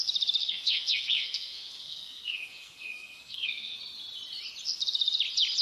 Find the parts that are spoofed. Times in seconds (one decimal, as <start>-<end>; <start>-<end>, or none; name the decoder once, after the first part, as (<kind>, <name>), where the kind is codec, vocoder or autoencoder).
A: 0.4-3.8 (codec, SNAC)